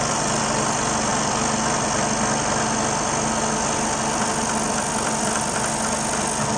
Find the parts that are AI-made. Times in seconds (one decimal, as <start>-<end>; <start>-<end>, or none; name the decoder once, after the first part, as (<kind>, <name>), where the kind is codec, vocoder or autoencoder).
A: none